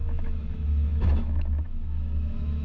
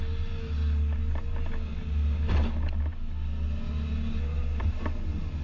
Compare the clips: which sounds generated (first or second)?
first